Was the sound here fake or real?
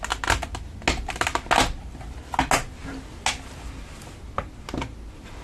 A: real